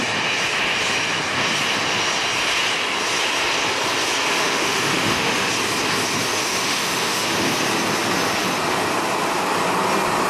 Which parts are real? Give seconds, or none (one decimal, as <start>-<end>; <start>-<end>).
0.0-4.3; 5.5-6.4; 7.5-10.3